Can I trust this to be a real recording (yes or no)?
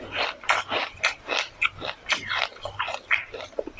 yes